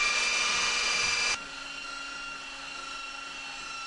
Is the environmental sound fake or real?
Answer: real